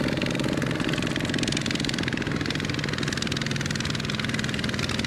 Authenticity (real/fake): real